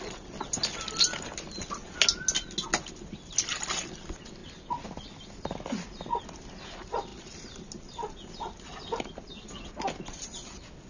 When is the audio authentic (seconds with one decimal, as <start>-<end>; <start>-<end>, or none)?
0.0-10.9